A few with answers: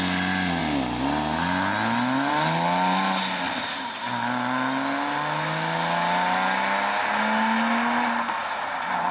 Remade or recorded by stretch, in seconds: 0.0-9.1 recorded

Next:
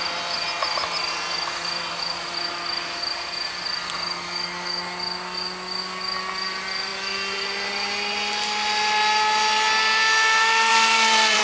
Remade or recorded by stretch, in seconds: 0.0-10.7 recorded; 10.7-11.4 remade